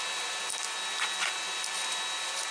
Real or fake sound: real